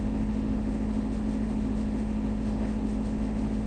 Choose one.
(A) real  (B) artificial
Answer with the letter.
B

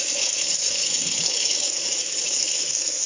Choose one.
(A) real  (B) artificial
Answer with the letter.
B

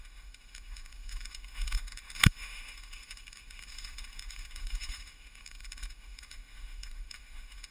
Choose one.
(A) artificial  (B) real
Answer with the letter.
A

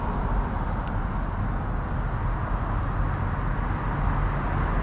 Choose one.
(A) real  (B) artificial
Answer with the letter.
A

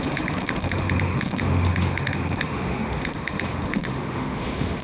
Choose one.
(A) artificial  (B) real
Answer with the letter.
A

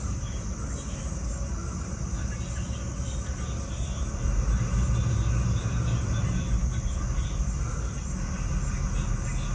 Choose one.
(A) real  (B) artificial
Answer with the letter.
A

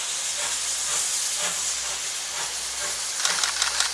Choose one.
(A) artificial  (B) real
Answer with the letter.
B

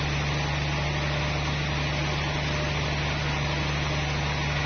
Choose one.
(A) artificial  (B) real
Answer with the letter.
B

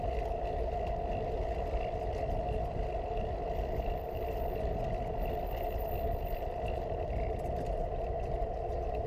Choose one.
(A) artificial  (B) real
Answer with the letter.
B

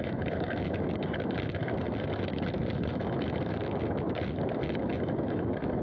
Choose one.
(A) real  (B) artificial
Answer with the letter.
B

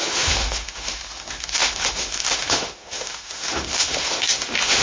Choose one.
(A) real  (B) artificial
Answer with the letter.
B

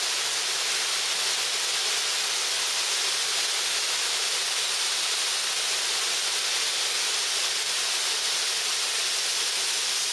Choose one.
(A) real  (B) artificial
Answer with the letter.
A